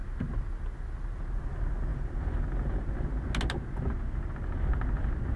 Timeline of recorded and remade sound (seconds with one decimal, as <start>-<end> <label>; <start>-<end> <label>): 0.0-1.2 remade; 1.2-5.4 recorded